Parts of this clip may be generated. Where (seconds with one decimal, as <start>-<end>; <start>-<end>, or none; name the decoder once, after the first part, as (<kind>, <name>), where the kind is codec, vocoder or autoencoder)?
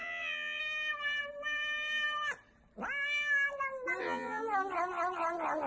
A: 0.0-0.6 (vocoder, WaveNeXt); 4.0-4.4